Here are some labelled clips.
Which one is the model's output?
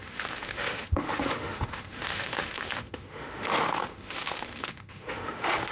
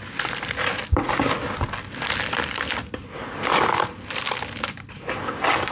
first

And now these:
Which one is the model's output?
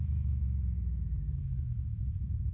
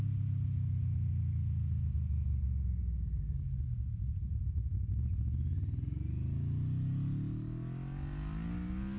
first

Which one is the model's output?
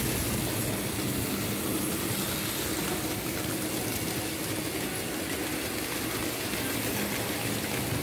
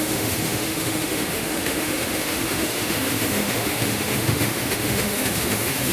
second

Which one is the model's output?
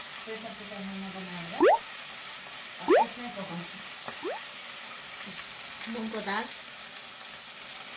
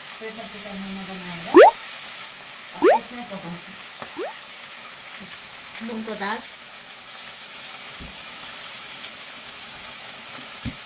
second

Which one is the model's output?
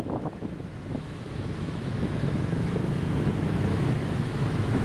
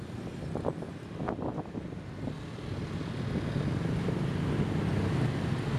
first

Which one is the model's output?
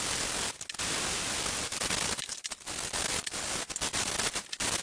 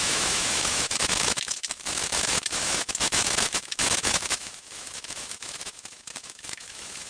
second